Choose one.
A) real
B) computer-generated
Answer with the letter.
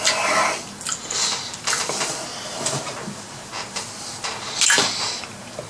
A